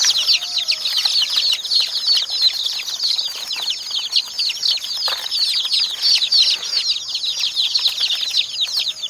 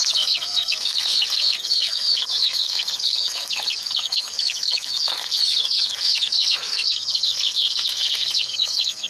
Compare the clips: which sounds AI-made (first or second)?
second